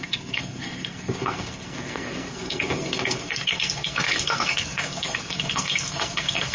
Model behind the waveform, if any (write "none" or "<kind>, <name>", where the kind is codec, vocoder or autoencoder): codec, SNAC